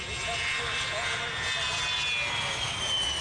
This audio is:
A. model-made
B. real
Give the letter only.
B